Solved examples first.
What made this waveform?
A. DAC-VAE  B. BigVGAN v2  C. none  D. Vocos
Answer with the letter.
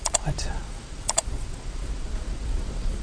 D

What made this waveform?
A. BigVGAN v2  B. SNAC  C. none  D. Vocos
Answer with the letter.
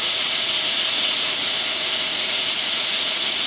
D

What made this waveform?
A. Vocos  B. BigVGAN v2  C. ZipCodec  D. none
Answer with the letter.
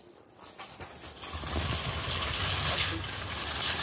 D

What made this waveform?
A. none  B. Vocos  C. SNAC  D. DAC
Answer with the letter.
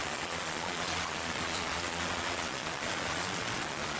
B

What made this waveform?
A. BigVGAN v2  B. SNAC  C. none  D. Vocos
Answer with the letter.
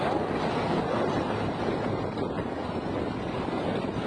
C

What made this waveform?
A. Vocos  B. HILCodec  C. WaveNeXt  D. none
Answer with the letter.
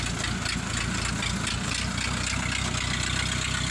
D